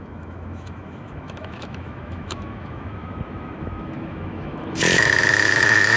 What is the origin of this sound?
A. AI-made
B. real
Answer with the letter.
A